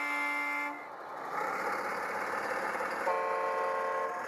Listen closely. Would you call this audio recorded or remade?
recorded